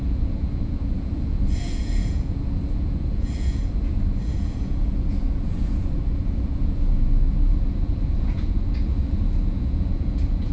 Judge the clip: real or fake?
fake